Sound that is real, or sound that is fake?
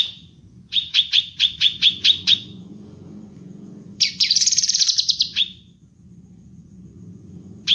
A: fake